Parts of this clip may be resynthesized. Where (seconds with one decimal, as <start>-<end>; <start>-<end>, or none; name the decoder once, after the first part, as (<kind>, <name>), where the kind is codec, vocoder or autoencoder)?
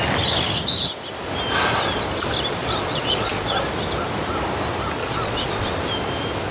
2.6-3.5 (vocoder, Vocos); 5.0-5.7